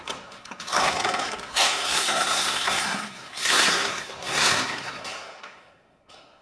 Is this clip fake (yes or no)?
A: yes